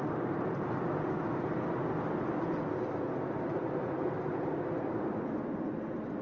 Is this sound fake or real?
real